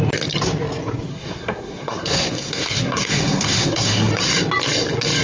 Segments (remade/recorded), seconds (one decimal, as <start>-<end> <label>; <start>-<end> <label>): 0.0-1.1 recorded; 1.1-4.1 remade; 4.1-5.2 recorded